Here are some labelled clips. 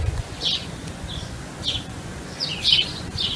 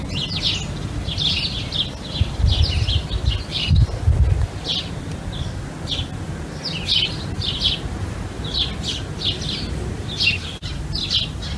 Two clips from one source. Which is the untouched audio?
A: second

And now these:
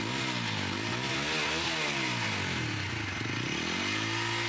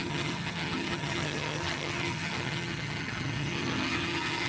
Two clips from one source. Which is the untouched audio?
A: first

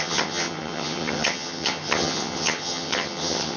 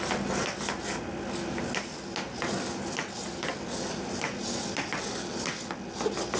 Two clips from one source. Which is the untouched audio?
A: second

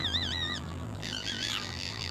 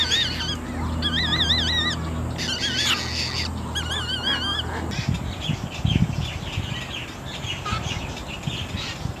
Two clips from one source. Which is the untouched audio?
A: second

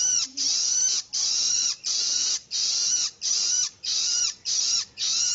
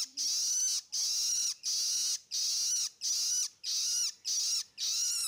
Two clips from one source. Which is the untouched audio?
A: second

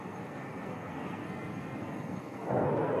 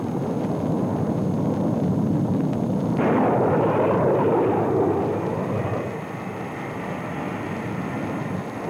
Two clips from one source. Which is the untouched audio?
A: second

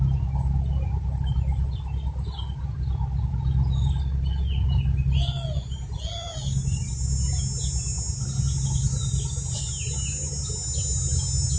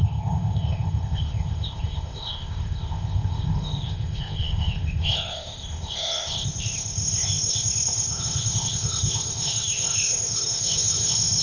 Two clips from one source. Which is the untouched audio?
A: first